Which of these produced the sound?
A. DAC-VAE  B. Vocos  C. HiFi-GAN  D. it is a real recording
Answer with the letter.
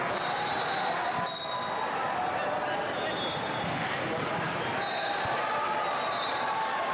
D